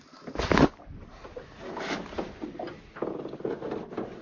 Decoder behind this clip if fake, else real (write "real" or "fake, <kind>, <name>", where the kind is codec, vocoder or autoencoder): real